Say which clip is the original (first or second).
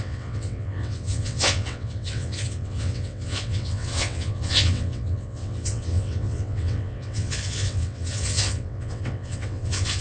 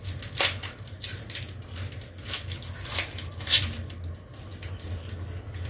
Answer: second